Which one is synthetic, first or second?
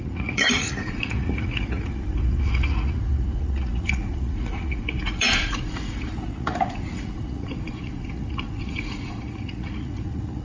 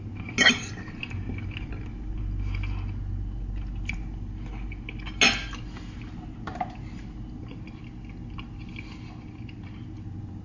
first